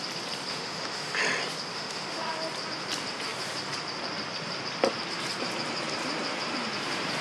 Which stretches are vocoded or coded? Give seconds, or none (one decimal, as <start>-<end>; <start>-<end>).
0.5-1.2; 1.7-2.3

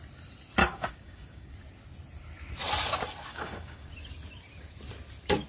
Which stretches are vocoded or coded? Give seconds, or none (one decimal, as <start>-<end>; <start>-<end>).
0.6-1.5; 3.3-3.9

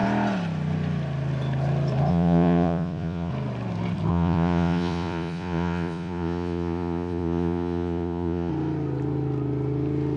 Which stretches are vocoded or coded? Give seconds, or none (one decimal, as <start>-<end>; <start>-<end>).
2.1-3.3; 4.1-8.5

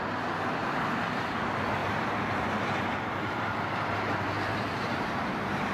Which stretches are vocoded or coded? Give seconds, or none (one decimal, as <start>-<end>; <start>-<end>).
0.6-1.4; 1.8-5.2

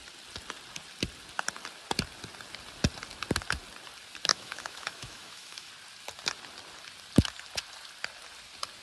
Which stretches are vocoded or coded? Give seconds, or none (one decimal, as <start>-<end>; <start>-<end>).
4.3-5.7